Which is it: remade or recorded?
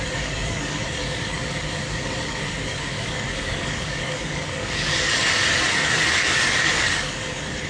remade